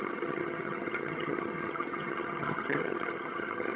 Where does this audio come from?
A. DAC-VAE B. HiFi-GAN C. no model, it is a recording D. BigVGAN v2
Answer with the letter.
B